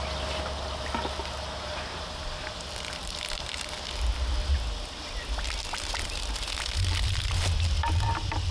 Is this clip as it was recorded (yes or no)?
yes